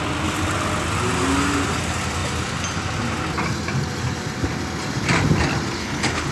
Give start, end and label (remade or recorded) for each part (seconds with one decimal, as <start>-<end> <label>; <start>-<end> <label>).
0.0-5.8 recorded; 5.8-6.3 remade